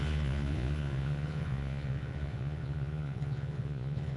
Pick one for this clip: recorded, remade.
remade